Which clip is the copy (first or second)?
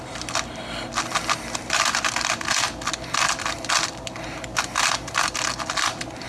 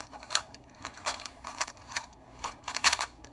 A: second